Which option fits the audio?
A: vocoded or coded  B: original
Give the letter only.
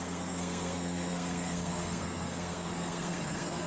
A